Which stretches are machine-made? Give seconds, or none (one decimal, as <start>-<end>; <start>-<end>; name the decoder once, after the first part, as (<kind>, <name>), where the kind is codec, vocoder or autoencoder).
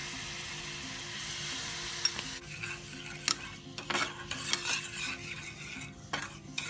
none